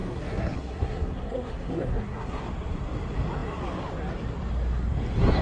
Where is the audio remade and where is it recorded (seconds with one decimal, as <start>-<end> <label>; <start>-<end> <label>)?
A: 0.0-2.4 remade; 2.4-5.4 recorded